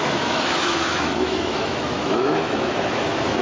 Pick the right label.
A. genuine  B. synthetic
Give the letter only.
B